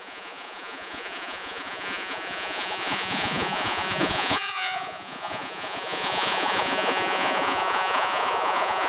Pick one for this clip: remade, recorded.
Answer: remade